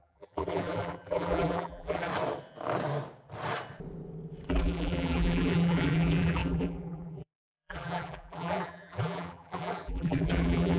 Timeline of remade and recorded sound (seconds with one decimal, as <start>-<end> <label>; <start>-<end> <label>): 0.0-2.1 remade; 2.1-4.5 recorded; 4.5-10.8 remade